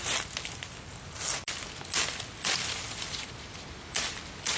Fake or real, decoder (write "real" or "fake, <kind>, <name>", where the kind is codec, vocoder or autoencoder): real